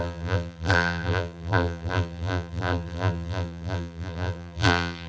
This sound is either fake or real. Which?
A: fake